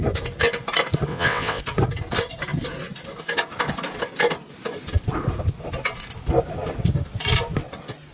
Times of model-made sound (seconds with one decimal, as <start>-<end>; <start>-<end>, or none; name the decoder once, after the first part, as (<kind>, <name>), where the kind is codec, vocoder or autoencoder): 1.1-1.6 (vocoder, WaveNeXt)

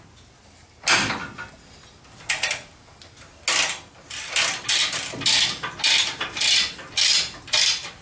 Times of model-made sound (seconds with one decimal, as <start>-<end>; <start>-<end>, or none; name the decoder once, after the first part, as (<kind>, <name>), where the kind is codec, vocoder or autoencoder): none

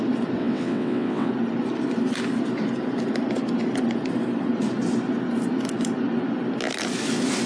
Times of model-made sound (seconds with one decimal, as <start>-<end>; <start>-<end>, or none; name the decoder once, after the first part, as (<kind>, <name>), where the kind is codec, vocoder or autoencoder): 0.4-1.3 (vocoder, WaveNeXt)

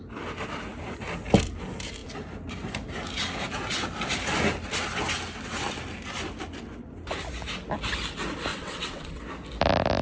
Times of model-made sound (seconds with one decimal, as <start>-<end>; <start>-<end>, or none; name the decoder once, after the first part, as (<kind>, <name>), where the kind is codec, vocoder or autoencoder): 8.5-9.2 (vocoder, WaveNeXt)

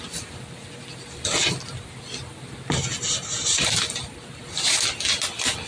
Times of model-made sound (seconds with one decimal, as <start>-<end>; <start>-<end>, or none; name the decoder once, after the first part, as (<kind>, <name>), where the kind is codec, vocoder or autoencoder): none